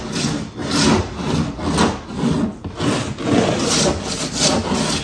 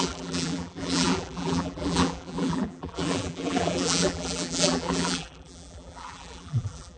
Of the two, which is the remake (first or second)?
second